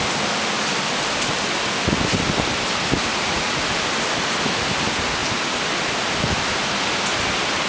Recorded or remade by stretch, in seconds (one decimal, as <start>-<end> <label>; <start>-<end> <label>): 0.0-3.1 recorded; 3.1-3.6 remade; 3.6-7.7 recorded